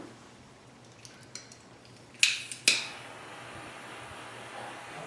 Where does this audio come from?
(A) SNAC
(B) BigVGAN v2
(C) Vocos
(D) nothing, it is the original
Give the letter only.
D